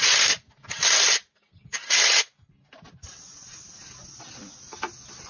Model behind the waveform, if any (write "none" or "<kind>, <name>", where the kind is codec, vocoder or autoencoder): none